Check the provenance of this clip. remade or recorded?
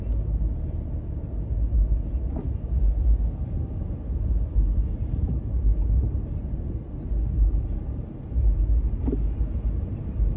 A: recorded